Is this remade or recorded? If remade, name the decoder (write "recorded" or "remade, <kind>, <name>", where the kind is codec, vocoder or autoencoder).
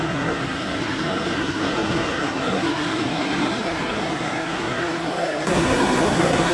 remade, codec, SNAC